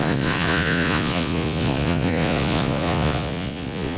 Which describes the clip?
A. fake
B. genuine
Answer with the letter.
A